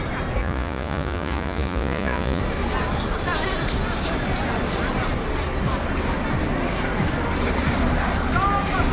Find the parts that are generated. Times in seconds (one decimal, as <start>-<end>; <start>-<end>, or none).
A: 0.4-2.4